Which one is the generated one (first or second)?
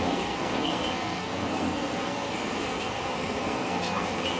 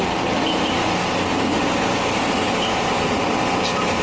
first